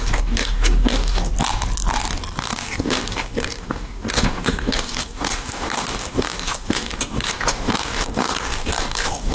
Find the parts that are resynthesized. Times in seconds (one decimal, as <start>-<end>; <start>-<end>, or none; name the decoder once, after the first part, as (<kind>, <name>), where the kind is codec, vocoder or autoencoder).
0.0-1.3 (codec, DAC); 2.4-9.3